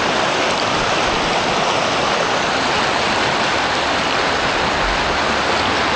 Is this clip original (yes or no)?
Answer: yes